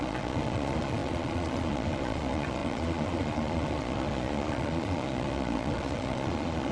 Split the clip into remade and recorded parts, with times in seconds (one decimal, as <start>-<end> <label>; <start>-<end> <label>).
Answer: 0.0-6.7 remade